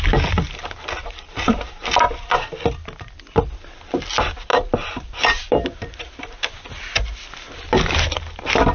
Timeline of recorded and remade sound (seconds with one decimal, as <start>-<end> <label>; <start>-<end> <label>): 0.0-1.0 recorded; 1.0-2.5 remade; 2.5-4.5 recorded; 4.5-6.2 remade; 6.2-8.7 recorded